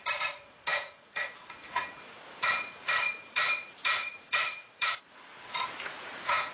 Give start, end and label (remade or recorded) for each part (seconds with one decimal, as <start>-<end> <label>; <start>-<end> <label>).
0.0-6.5 remade